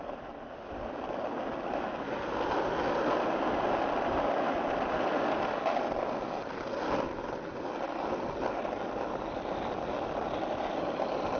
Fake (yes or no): no